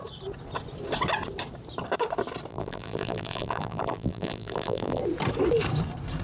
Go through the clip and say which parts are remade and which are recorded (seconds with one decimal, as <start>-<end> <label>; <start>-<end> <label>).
0.0-2.5 recorded; 2.5-5.0 remade; 5.0-6.2 recorded